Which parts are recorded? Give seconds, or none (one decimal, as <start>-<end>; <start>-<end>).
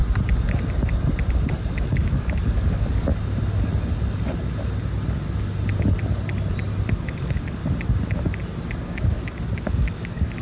0.0-1.7; 3.1-6.9; 7.6-8.8